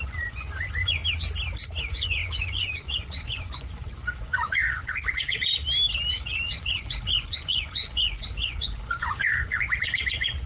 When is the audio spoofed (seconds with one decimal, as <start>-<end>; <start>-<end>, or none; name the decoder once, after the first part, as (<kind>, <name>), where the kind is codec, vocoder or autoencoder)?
0.0-1.0 (vocoder, Vocos); 1.8-5.6; 6.1-10.5